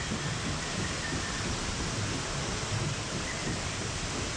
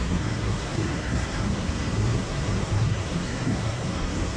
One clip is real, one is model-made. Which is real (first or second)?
first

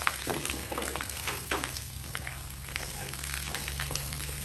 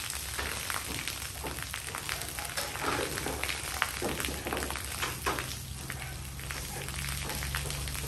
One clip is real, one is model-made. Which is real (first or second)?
second